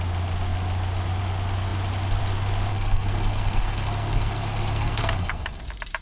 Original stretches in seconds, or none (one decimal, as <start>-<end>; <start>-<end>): 0.0-2.7; 5.6-6.0